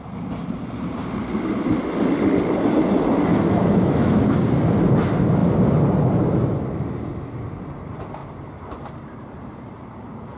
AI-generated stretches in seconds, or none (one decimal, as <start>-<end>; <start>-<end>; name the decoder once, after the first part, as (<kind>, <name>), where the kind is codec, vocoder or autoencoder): 3.3-4.2 (autoencoder, DAC-VAE)